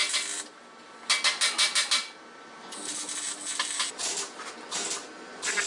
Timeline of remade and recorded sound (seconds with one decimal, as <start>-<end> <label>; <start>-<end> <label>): 0.0-0.7 remade; 0.7-5.7 recorded